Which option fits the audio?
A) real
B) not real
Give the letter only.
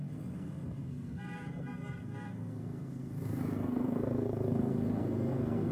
B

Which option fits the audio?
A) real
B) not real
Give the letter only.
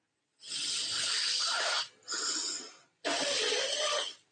A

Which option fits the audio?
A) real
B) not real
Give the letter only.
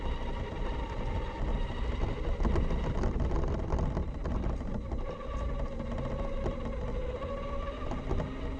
A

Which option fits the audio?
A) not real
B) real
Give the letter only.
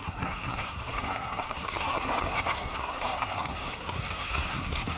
A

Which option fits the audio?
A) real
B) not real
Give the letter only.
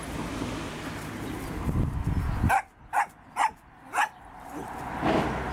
A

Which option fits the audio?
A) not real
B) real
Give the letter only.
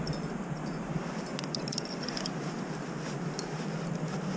B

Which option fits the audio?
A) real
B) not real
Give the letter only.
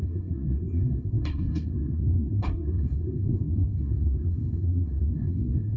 B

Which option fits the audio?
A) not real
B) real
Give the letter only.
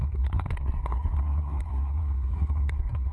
A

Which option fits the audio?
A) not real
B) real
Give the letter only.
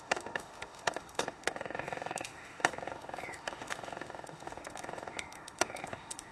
A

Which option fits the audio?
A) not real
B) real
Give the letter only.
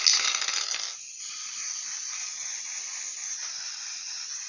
B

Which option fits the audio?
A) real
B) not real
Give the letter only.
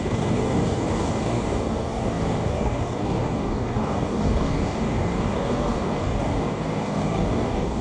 B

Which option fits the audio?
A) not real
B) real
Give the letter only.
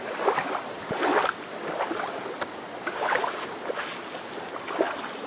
B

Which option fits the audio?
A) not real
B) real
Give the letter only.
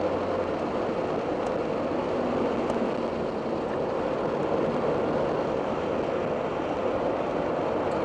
B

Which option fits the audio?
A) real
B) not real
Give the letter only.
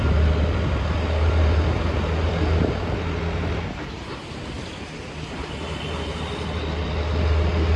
A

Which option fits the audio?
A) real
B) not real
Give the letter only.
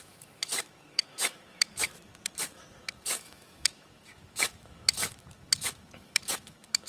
B